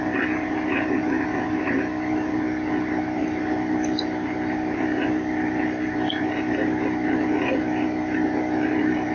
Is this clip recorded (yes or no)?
yes